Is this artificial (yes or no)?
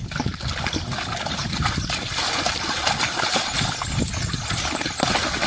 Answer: no